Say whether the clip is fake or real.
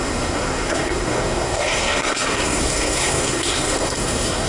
fake